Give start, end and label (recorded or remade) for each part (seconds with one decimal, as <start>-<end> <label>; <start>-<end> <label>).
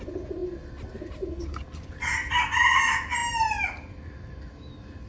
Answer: 0.0-5.1 recorded